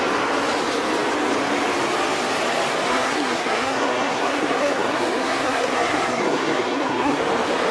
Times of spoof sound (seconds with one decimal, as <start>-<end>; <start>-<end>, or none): 2.9-7.2